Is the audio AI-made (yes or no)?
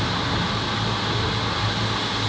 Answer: no